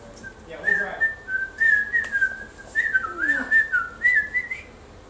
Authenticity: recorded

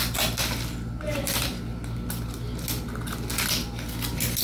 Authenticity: recorded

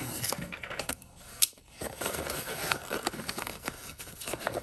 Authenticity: remade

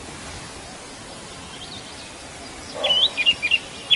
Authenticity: recorded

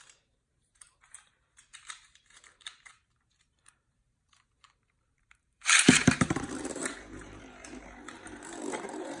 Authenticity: remade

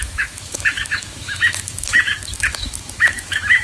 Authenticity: remade